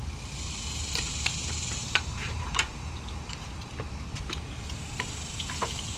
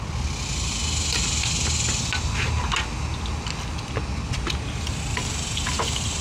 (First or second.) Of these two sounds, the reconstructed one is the first